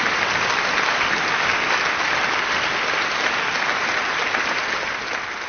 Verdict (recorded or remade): recorded